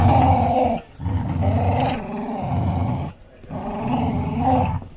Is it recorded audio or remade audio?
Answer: recorded